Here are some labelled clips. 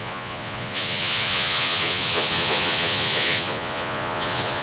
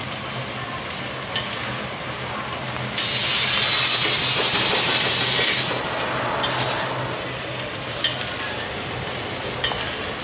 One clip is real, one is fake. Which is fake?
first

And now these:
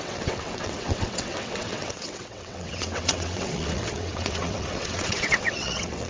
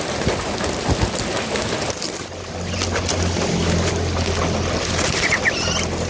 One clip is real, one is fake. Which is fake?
first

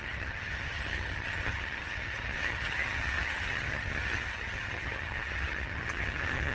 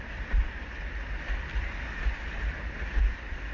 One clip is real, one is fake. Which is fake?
first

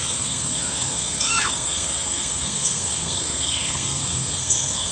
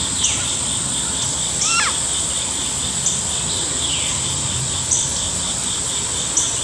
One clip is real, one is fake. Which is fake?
first